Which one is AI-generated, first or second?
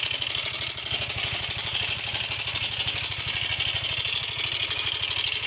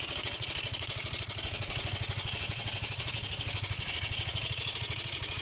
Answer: second